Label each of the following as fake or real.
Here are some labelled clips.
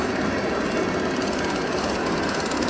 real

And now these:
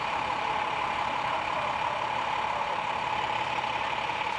fake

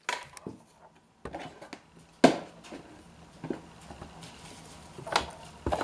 real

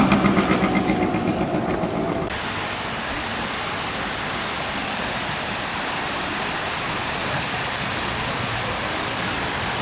real